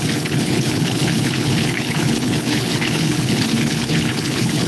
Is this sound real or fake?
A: fake